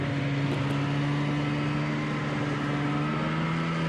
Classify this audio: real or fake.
real